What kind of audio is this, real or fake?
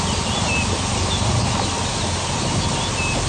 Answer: real